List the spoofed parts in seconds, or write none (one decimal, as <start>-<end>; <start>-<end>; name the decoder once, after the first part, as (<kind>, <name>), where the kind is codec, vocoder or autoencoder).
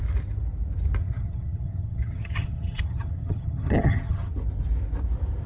1.0-4.3 (vocoder, HiFi-GAN)